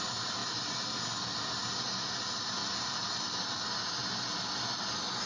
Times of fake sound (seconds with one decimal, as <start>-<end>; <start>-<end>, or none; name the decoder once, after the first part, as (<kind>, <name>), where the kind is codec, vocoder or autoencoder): none